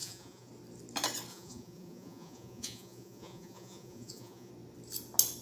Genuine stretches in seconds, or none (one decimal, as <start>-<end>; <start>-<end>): 0.5-1.3; 4.5-5.4